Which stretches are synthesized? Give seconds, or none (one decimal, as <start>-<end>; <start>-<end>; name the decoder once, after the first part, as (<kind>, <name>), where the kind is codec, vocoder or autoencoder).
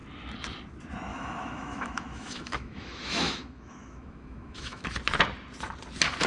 1.1-4.9 (autoencoder, DAC-VAE)